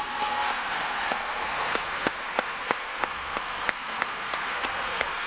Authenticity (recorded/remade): remade